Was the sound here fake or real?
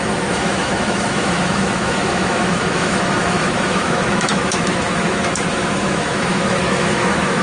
fake